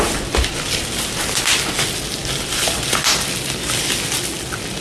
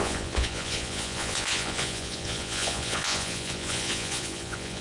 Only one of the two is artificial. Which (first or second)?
second